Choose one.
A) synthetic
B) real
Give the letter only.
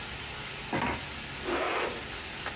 B